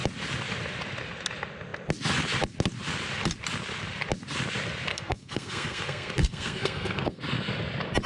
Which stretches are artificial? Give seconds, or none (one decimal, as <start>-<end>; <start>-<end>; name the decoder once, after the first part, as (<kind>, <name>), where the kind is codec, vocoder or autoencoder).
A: 4.9-7.2 (codec, SNAC)